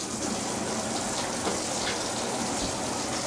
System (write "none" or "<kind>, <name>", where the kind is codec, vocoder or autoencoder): none